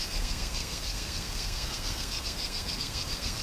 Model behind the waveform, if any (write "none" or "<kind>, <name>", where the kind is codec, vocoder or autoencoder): codec, SNAC